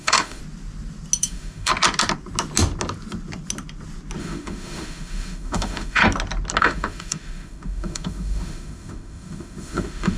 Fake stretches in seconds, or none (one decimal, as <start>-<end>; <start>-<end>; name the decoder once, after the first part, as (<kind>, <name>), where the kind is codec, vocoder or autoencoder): 0.0-0.4 (autoencoder, DAC-VAE); 1.2-1.7; 4.2-6.0; 6.6-10.2